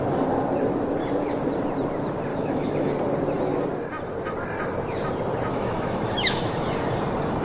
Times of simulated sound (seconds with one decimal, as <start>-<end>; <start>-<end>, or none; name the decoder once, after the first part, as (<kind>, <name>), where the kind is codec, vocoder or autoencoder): 2.3-2.9 (autoencoder, DAC-VAE); 5.5-6.5